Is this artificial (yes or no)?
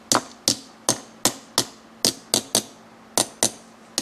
no